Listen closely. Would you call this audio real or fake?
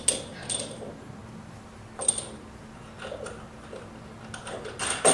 real